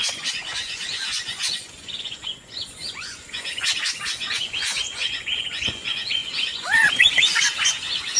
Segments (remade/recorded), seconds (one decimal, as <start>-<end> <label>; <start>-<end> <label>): 0.0-8.2 remade